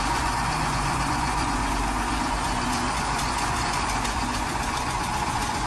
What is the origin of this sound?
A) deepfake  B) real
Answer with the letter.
A